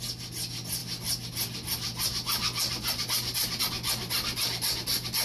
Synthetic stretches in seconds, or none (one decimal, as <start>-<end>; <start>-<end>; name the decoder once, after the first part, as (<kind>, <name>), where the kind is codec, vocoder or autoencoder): none